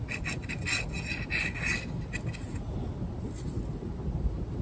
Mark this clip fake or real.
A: real